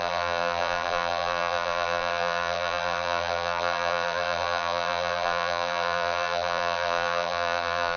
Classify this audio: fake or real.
fake